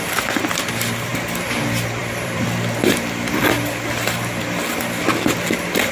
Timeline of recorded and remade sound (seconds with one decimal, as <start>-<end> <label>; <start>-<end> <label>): 0.0-2.0 recorded; 2.0-5.0 remade; 5.0-5.9 recorded